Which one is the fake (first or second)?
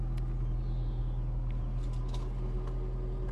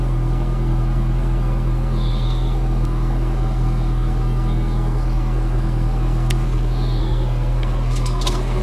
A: second